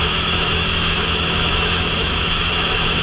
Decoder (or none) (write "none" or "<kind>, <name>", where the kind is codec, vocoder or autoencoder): autoencoder, DAC-VAE